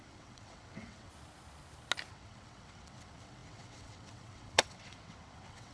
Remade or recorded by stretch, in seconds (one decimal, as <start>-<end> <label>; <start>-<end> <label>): 0.0-1.1 remade; 1.1-2.1 recorded; 2.1-5.7 remade